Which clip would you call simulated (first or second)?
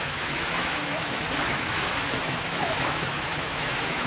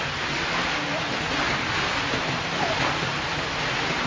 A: first